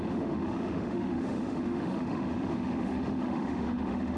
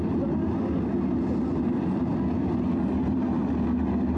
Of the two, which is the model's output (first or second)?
first